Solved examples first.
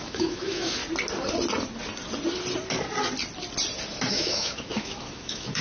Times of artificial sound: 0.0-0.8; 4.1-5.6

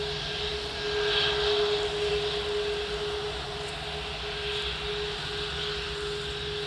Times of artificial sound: none